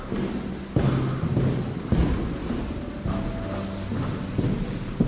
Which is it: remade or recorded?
recorded